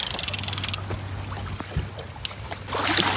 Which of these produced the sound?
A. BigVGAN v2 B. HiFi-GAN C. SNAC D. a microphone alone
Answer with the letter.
D